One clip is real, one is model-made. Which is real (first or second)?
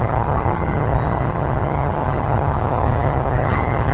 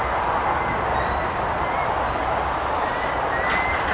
second